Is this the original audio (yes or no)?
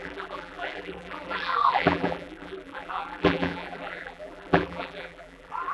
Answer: no